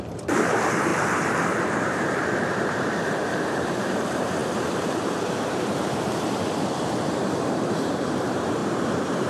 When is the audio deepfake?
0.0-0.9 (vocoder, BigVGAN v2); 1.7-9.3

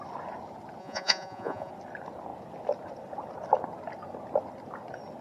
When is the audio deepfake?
0.8-1.7 (vocoder, Vocos)

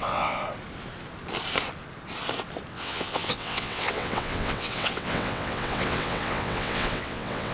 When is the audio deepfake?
0.0-0.4 (vocoder, WaveNeXt); 2.7-7.5

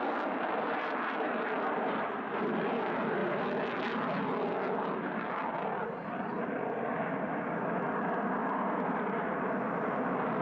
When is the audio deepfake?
8.4-10.4 (vocoder, BigVGAN v2)